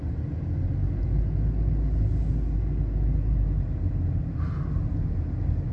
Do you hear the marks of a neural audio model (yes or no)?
no